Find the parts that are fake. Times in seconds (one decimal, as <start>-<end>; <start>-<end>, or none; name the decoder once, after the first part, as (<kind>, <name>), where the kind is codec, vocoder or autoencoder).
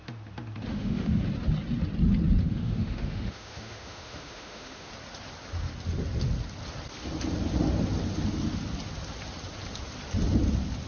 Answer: 0.7-1.2 (autoencoder, DAC-VAE); 2.4-4.9